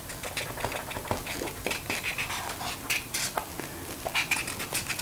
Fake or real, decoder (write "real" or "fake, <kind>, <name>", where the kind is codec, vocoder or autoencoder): real